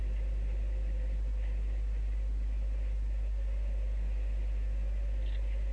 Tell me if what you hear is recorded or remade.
recorded